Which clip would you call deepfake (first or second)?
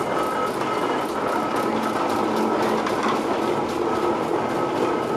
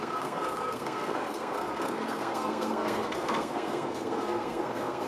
second